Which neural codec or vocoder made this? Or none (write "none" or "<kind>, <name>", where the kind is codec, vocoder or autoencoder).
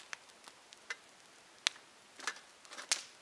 none